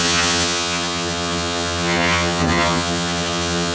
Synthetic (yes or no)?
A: yes